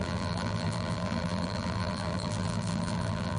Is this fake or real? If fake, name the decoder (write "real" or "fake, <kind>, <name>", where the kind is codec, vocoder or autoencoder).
fake, vocoder, BigVGAN v2